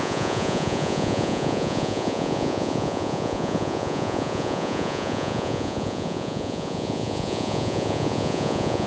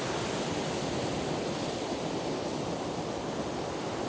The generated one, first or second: first